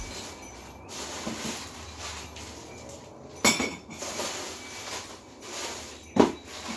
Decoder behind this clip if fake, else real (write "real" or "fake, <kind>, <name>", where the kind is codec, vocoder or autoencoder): real